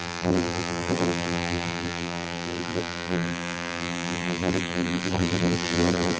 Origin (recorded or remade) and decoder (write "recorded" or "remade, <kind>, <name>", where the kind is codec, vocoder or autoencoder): remade, vocoder, BigVGAN v2